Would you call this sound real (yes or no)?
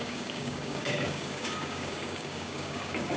no